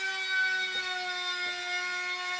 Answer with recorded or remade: recorded